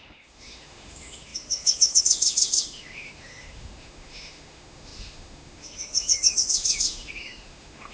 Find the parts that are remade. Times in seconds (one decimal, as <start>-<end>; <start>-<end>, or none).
0.0-7.9